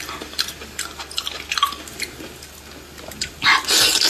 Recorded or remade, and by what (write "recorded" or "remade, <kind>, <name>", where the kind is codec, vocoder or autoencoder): recorded